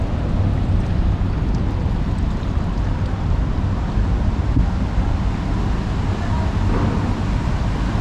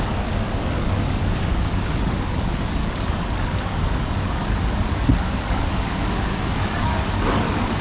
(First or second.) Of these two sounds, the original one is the first